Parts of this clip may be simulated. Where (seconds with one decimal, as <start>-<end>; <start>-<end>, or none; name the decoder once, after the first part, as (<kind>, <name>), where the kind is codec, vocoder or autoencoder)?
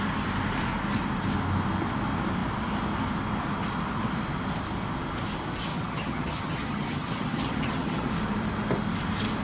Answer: 5.7-8.1 (vocoder, HiFi-GAN)